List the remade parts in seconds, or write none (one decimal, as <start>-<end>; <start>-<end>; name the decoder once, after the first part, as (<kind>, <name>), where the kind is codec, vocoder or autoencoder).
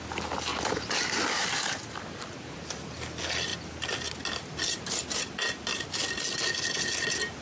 none